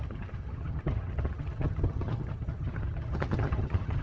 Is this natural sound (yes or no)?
no